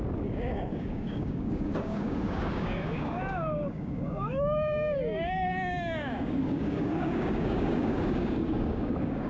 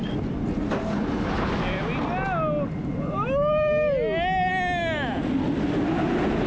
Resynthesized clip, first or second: first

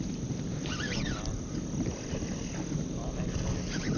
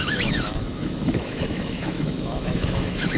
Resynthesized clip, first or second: second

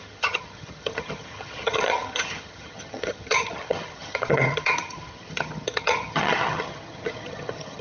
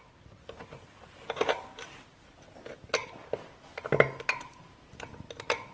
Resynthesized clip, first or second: first